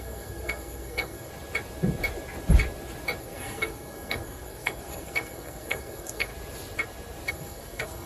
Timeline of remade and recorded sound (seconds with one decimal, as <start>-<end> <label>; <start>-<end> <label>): 0.0-1.3 remade; 1.3-3.2 recorded; 3.2-6.3 remade; 6.3-7.3 recorded; 7.3-8.1 remade